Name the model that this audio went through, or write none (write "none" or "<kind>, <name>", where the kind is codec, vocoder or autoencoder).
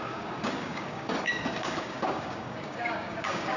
codec, DAC